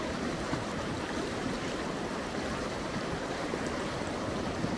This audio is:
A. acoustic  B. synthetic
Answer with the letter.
B